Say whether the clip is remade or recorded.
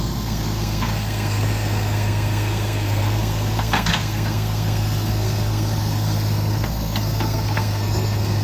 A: remade